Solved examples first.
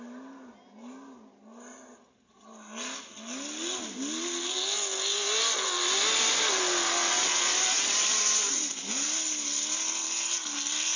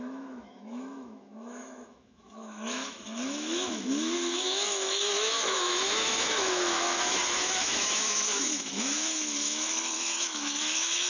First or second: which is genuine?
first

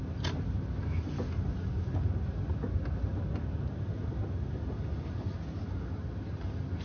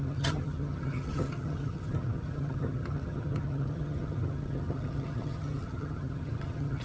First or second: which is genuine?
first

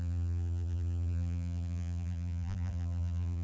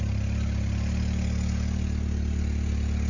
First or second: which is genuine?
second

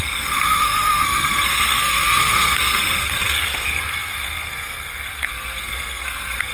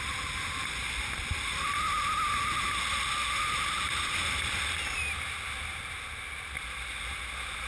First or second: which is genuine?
second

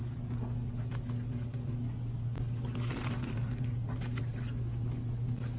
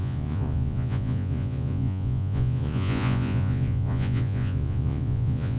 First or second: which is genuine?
first